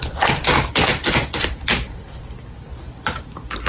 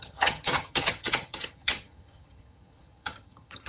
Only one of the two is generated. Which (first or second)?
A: second